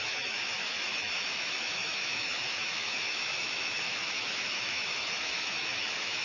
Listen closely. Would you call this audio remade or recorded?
remade